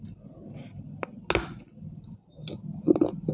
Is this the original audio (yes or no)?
yes